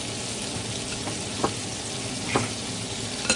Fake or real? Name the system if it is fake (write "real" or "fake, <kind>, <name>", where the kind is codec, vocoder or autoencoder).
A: real